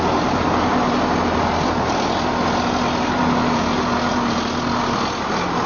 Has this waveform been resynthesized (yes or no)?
no